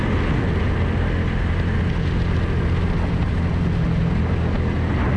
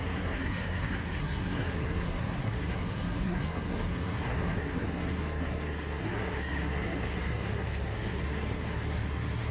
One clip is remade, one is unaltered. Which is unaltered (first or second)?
first